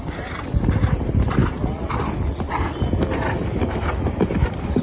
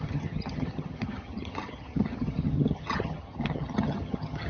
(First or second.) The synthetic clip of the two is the second